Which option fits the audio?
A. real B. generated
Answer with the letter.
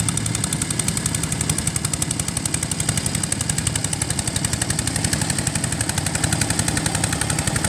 A